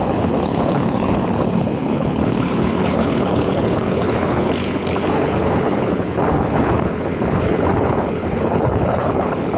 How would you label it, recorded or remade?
remade